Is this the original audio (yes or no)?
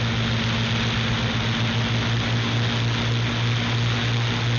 yes